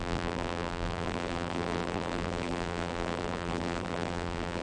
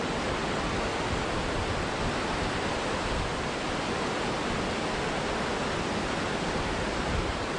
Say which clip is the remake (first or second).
first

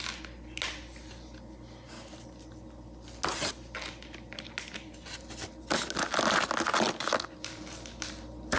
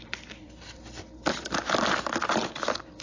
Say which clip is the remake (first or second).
second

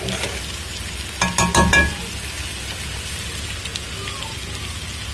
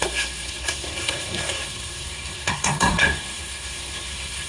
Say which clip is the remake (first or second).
second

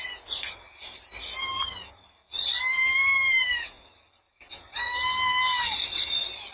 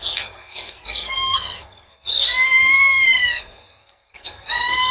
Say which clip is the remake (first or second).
second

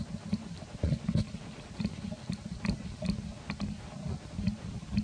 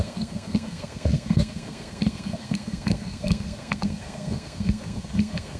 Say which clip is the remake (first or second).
second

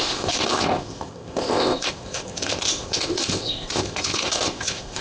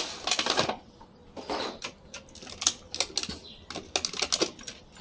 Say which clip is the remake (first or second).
first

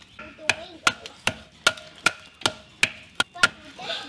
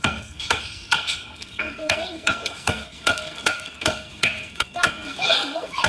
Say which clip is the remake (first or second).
second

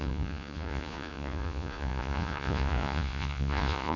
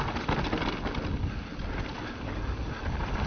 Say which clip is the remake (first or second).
first